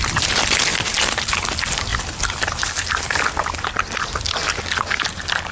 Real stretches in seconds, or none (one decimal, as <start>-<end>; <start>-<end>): 0.0-5.5